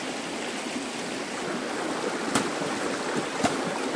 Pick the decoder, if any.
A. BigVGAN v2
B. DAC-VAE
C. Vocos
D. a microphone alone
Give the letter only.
D